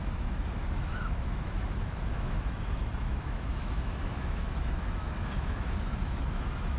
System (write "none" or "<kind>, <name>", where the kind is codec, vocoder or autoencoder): autoencoder, DAC-VAE